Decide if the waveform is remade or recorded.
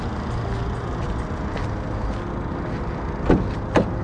recorded